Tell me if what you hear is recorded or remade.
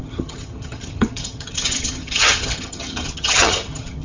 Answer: remade